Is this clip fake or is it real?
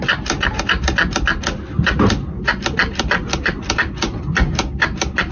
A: real